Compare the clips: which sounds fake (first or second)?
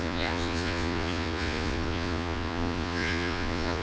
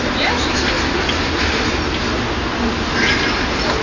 first